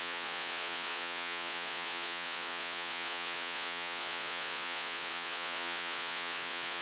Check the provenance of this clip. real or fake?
fake